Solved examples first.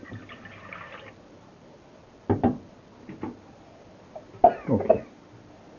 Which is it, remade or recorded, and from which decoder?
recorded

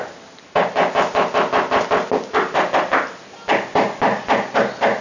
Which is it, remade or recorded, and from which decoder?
recorded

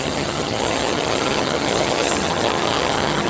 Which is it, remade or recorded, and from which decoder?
remade, vocoder, HiFi-GAN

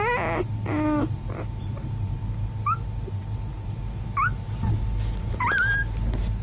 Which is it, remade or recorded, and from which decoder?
recorded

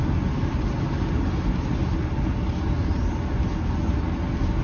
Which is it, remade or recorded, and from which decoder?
recorded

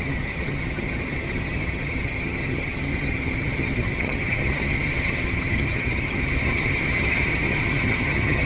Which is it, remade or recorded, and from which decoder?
remade, vocoder, HiFi-GAN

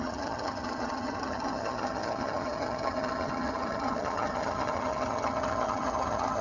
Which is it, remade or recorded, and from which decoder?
remade, vocoder, HiFi-GAN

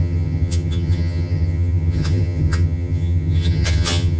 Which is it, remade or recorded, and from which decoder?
remade, vocoder, HiFi-GAN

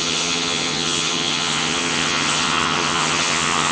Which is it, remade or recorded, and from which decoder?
remade, vocoder, HiFi-GAN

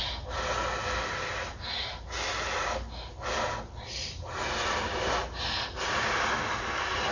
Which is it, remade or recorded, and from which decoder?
recorded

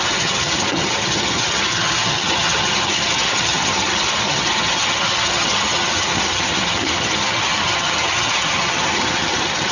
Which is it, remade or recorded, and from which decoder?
remade, vocoder, HiFi-GAN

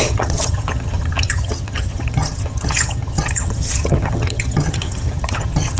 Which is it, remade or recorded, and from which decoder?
remade, vocoder, HiFi-GAN